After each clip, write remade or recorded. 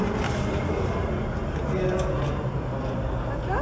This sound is recorded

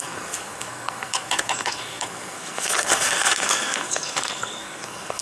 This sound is remade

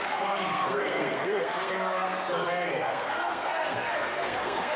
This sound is remade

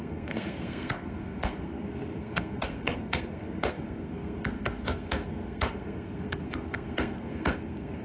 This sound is remade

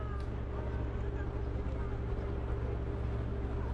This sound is recorded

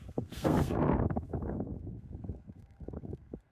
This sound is remade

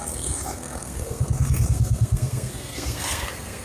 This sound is remade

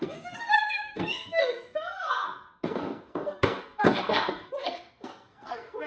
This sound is remade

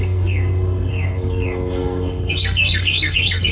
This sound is remade